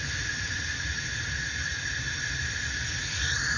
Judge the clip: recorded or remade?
recorded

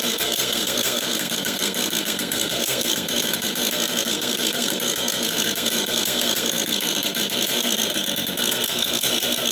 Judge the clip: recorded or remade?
remade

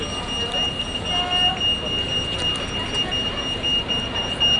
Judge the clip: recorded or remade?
recorded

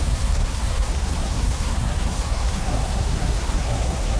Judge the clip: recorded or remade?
remade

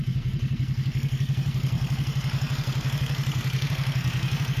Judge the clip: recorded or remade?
remade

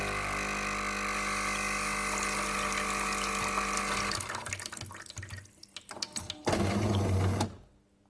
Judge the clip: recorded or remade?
recorded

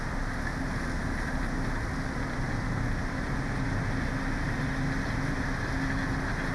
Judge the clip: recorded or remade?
recorded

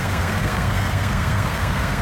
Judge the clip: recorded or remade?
remade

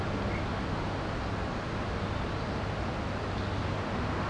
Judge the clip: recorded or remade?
recorded